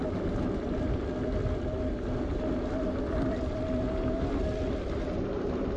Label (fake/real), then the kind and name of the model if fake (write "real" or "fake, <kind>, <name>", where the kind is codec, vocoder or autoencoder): real